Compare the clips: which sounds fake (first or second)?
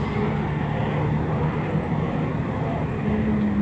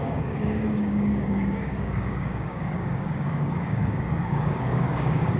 second